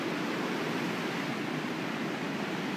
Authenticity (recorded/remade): recorded